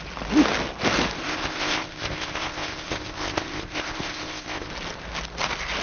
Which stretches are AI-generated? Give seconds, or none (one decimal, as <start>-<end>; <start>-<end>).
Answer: 1.2-4.7